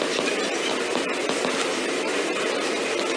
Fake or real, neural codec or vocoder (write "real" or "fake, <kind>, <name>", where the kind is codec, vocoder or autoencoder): real